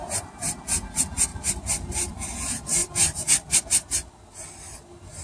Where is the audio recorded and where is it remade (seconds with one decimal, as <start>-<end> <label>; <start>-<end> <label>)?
0.0-0.6 remade; 0.6-1.3 recorded; 1.3-2.1 remade; 2.1-2.8 recorded; 2.8-3.6 remade; 3.6-5.2 recorded